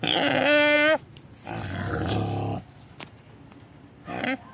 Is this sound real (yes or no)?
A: yes